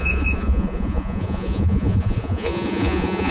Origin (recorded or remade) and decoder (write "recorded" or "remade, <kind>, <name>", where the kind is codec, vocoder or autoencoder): remade, vocoder, Vocos